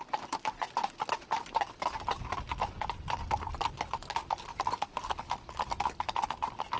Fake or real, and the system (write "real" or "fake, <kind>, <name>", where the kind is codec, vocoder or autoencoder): real